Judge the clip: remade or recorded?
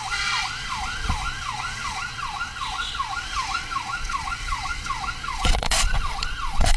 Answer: remade